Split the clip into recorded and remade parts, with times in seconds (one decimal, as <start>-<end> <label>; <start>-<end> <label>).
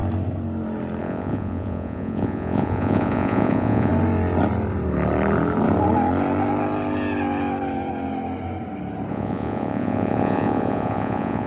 0.0-1.0 recorded; 1.0-3.9 remade; 3.9-9.1 recorded; 9.1-11.5 remade